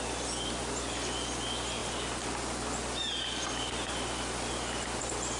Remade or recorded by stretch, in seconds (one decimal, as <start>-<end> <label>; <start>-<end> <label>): 0.0-5.4 recorded